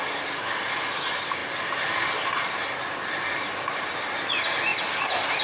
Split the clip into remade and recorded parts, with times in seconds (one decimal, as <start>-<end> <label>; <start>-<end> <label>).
0.0-5.4 recorded